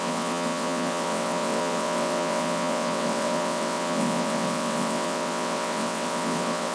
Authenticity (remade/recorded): remade